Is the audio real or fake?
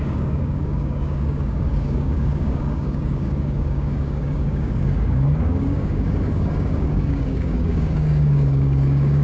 fake